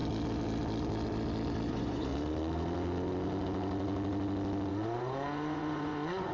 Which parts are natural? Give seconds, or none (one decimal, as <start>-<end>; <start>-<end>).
0.0-1.7; 2.1-4.7